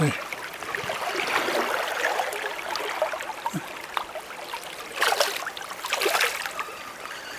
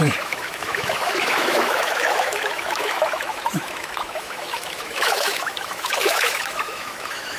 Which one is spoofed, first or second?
second